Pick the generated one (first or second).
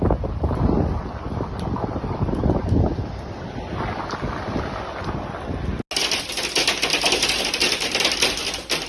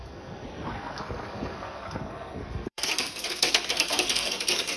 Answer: second